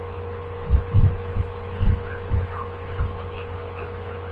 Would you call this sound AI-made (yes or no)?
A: yes